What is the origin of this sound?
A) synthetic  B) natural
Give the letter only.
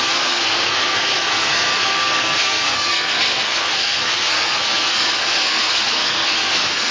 A